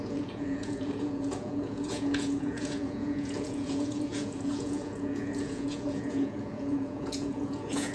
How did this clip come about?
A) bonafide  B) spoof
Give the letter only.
B